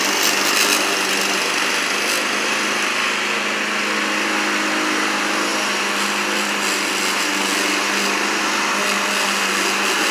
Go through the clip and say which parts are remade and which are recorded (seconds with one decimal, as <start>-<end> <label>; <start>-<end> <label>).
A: 0.0-10.1 recorded